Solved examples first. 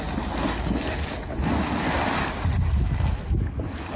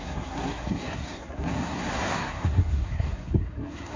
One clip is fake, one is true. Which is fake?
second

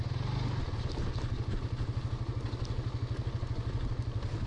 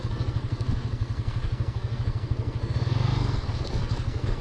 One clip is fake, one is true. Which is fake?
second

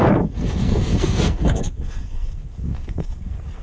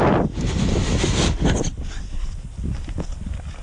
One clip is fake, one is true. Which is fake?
first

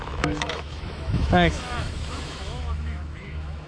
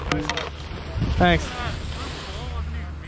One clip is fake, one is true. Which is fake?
first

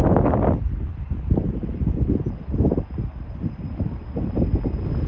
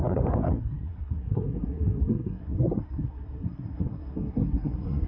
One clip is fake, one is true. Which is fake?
second